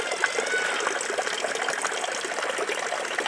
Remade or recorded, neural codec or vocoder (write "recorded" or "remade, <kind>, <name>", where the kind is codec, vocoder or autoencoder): recorded